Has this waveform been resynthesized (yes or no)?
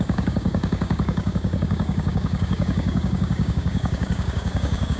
yes